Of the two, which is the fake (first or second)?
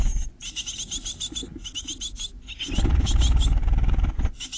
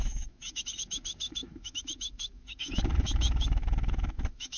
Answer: second